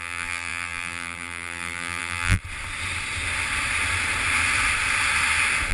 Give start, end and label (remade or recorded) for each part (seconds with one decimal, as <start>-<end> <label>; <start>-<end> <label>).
0.0-2.4 remade; 2.4-5.7 recorded

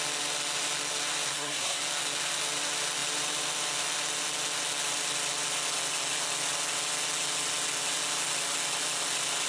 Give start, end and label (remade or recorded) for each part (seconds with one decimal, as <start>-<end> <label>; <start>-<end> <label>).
0.0-1.3 recorded; 1.3-1.8 remade; 1.8-9.5 recorded

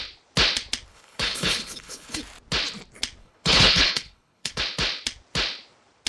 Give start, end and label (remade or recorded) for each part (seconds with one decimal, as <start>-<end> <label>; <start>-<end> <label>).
0.0-0.9 recorded; 0.9-2.2 remade; 2.2-3.2 recorded; 3.2-4.6 remade; 4.6-6.1 recorded

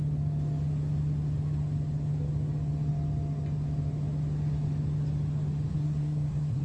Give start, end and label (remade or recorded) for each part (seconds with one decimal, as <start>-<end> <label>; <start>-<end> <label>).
0.0-5.7 recorded; 5.7-6.6 remade